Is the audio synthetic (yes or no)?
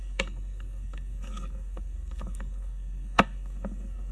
yes